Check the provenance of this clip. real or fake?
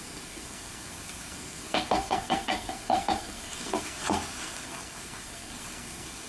fake